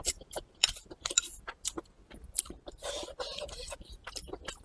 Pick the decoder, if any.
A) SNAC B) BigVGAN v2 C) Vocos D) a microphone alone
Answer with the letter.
D